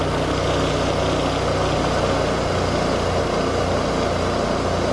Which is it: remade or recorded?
recorded